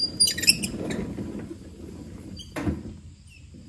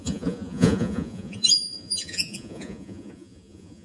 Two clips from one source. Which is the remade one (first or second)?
second